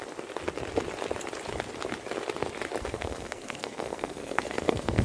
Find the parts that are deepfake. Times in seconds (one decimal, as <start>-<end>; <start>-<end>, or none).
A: 2.8-5.0